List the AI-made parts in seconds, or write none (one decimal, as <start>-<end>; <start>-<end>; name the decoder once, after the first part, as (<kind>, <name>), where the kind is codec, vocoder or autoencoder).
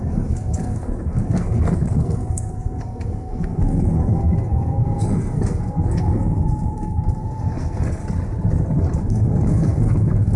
0.0-8.0 (codec, SNAC); 9.0-10.4